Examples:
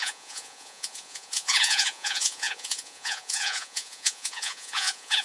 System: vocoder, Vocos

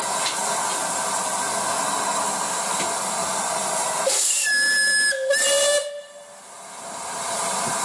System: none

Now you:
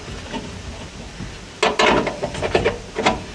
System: none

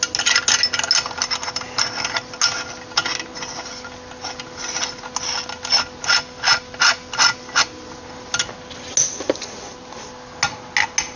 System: none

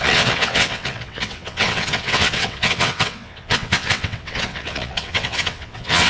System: vocoder, WaveNeXt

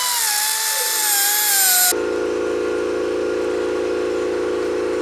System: none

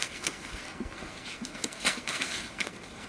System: codec, SNAC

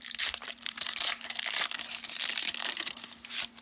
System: vocoder, BigVGAN v2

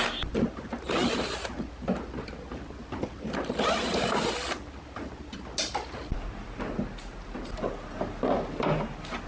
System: none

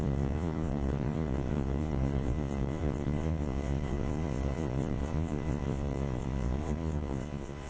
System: vocoder, Vocos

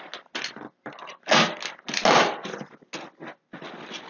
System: none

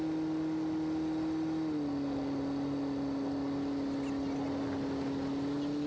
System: none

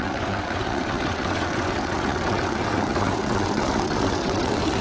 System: vocoder, WaveNeXt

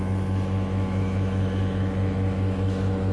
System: autoencoder, DAC-VAE